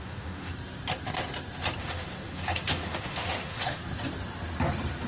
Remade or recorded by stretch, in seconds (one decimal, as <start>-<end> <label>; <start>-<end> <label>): 0.0-0.5 remade; 0.5-1.8 recorded; 1.8-3.8 remade; 3.8-5.1 recorded